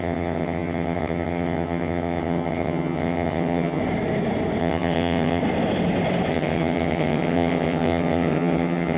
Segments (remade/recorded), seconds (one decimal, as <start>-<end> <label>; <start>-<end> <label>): 0.0-3.8 remade; 3.8-4.6 recorded; 4.6-5.4 remade; 5.4-6.3 recorded; 6.3-9.0 remade